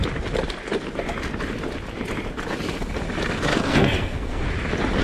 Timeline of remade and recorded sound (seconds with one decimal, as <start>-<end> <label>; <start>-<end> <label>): 0.0-3.5 recorded; 3.5-4.5 remade; 4.5-5.0 recorded